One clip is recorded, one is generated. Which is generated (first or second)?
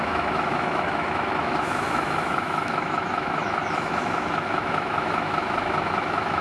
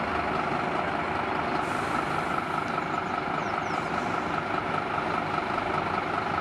first